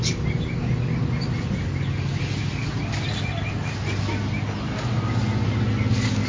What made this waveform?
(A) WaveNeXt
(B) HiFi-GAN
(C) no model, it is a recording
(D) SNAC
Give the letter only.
C